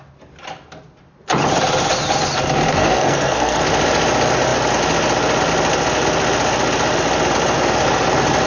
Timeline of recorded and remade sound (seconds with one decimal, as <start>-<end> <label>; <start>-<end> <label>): 0.0-2.7 recorded; 2.7-3.6 remade; 3.6-8.5 recorded